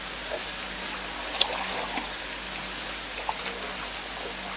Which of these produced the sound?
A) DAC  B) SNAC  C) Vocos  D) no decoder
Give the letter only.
D